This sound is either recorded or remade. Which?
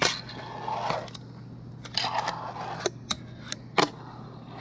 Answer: recorded